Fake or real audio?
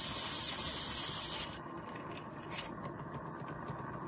real